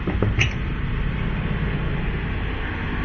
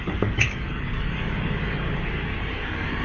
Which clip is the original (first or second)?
first